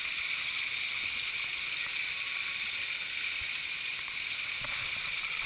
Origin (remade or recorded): recorded